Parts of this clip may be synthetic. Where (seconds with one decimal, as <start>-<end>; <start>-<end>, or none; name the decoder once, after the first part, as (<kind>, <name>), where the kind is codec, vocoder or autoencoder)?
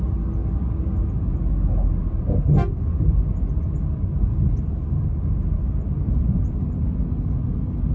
none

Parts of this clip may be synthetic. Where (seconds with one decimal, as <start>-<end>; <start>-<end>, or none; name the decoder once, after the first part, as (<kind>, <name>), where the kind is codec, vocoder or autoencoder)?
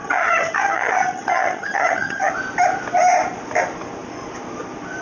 0.0-2.3 (vocoder, HiFi-GAN)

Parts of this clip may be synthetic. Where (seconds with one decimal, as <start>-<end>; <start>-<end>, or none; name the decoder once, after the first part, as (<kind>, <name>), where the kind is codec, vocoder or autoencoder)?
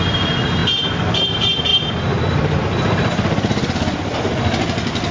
1.7-5.1 (vocoder, BigVGAN v2)